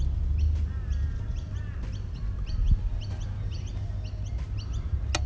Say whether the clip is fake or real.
real